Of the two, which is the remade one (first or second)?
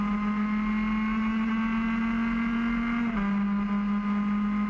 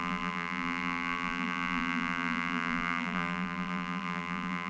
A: second